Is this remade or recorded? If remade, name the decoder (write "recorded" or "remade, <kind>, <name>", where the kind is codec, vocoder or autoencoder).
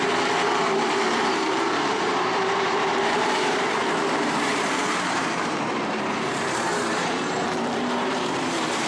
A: remade, vocoder, BigVGAN v2